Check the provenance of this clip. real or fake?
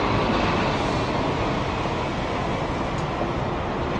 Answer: real